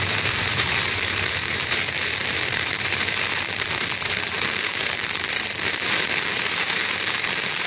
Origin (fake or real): fake